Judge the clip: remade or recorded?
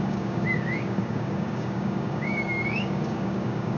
remade